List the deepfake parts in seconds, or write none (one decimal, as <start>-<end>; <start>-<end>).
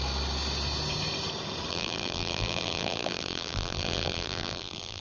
1.7-5.0